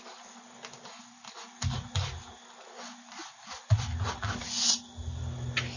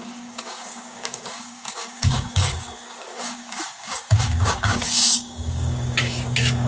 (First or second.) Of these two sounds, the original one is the first